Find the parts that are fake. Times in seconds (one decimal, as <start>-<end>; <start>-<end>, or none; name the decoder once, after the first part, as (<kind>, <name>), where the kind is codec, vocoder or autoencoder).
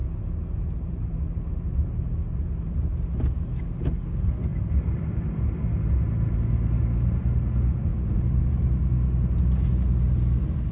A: none